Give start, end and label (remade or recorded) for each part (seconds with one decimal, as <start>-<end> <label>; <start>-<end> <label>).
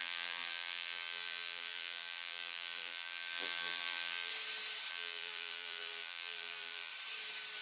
0.0-4.3 remade; 4.3-4.9 recorded; 4.9-6.9 remade; 6.9-7.6 recorded